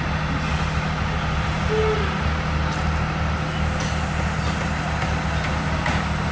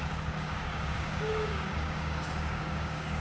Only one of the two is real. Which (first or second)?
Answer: first